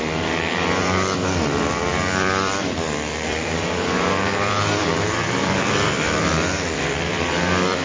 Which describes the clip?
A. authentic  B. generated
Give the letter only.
B